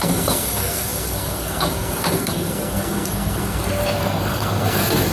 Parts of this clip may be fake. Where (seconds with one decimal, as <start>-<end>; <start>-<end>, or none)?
0.0-5.1